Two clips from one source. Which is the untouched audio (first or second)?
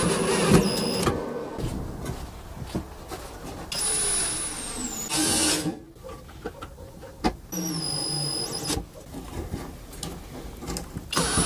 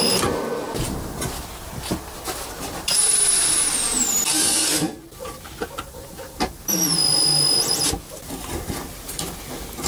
first